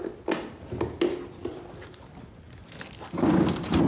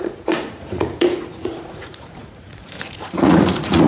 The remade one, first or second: second